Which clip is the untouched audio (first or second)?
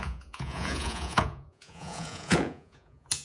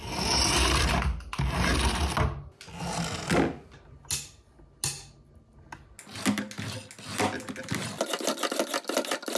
second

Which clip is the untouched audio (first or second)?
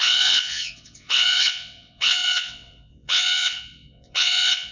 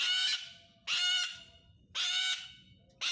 second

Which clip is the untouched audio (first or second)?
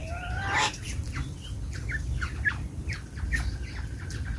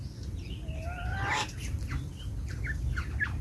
second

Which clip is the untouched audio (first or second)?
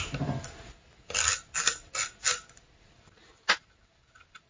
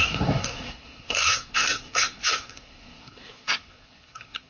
first